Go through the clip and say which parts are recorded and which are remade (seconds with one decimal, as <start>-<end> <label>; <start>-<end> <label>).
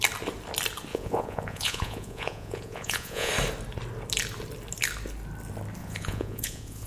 0.0-0.9 recorded; 0.9-3.3 remade; 3.3-5.8 recorded; 5.8-6.9 remade